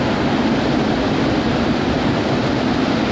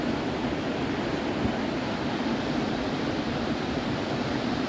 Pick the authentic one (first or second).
first